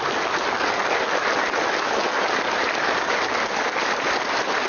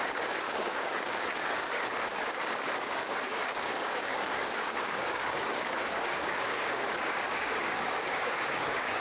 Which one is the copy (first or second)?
second